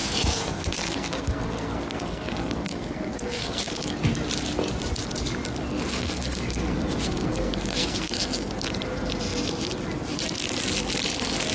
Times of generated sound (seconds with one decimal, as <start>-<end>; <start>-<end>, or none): 0.0-4.0; 5.7-8.5